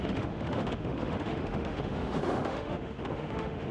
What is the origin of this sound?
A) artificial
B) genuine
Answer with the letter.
A